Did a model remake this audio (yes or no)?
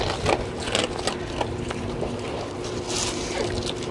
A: no